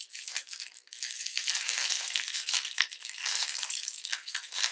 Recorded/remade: remade